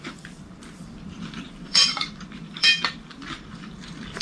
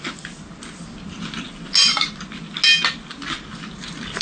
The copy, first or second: first